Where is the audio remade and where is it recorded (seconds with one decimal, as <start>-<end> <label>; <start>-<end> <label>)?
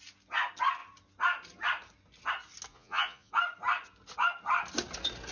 0.0-2.7 recorded; 2.7-3.3 remade; 3.3-5.3 recorded